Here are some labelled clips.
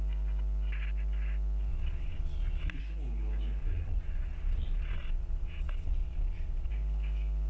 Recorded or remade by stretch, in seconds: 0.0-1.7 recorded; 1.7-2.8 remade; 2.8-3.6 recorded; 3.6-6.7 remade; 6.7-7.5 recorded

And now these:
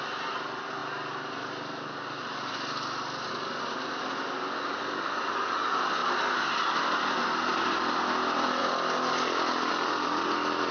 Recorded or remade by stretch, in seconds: 0.0-10.7 recorded

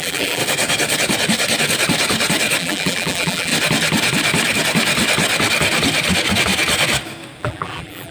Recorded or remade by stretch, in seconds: 0.0-0.4 remade; 0.4-2.6 recorded; 2.6-3.5 remade; 3.5-7.4 recorded; 7.4-8.1 remade

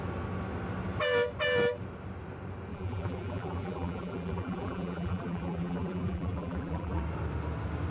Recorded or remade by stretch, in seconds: 0.0-2.7 recorded; 2.7-7.0 remade; 7.0-7.9 recorded